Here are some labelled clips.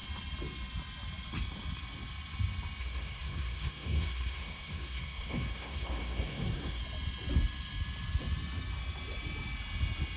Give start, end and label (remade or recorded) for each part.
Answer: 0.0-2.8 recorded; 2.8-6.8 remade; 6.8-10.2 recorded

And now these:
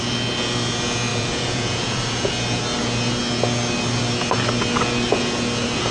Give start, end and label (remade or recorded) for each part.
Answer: 0.0-1.1 recorded; 1.1-2.3 remade; 2.3-5.9 recorded

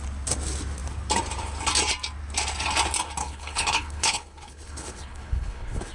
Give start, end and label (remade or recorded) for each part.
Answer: 0.0-3.2 recorded; 3.2-5.9 remade

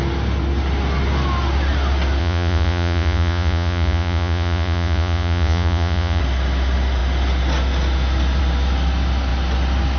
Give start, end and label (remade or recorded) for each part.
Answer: 0.0-2.2 recorded; 2.2-6.2 remade; 6.2-10.0 recorded

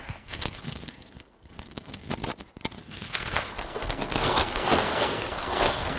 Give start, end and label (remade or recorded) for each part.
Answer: 0.0-2.1 remade; 2.1-2.8 recorded; 2.8-6.0 remade

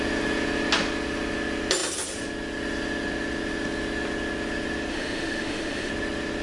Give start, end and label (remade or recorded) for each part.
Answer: 0.0-4.9 recorded; 4.9-5.9 remade; 5.9-6.4 recorded

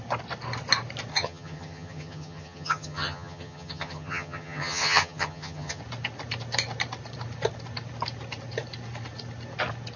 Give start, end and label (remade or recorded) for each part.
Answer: 0.0-1.1 recorded; 1.1-5.8 remade; 5.8-10.0 recorded